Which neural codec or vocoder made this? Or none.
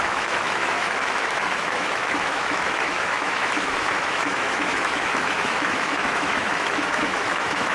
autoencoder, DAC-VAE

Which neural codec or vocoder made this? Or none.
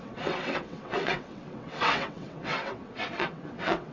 vocoder, WaveNeXt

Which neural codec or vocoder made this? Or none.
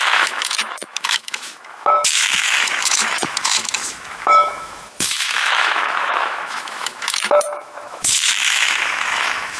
autoencoder, DAC-VAE